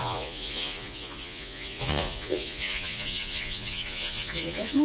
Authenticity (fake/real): fake